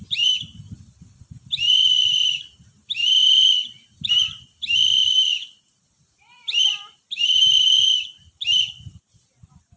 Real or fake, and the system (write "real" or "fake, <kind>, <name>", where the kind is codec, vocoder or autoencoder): fake, vocoder, BigVGAN v2